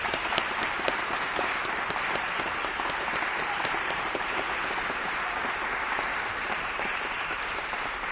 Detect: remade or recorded remade